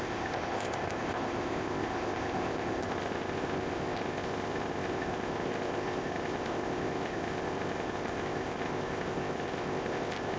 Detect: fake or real fake